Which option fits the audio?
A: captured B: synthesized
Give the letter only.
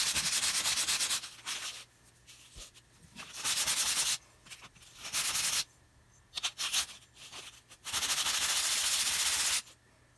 A